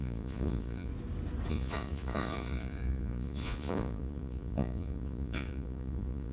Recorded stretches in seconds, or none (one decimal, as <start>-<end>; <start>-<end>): 0.9-1.5